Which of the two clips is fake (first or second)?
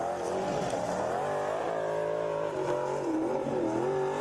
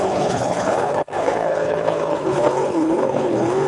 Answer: second